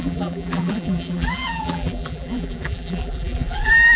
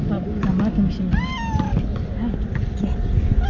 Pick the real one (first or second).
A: second